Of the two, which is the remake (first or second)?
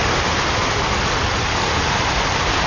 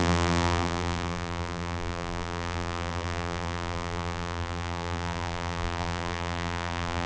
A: second